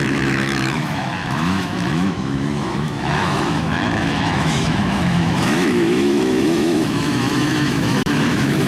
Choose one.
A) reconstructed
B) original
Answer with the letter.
A